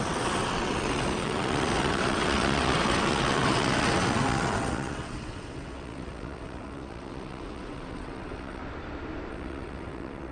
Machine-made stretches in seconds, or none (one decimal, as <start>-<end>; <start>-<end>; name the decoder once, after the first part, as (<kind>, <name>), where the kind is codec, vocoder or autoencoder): 0.0-8.6 (vocoder, WaveNeXt); 9.3-10.3